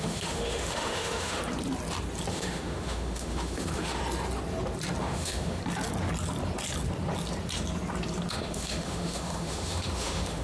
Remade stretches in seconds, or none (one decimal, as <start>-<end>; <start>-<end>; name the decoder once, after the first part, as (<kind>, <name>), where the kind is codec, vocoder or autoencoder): 0.0-1.4 (autoencoder, DAC-VAE); 2.3-4.0; 5.0-5.6; 8.3-10.4